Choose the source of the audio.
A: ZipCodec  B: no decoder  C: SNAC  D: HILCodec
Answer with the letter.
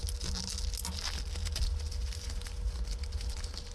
B